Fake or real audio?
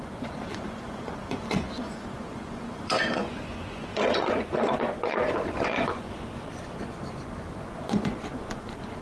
fake